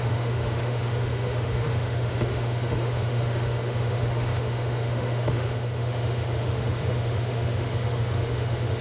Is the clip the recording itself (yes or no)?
no